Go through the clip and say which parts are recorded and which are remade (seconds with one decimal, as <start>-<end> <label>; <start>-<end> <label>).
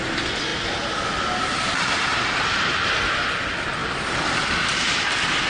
0.0-5.5 recorded